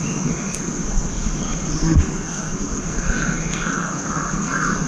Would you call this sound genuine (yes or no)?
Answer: no